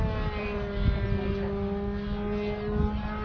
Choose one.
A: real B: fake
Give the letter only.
A